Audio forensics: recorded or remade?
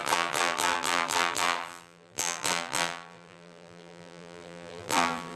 remade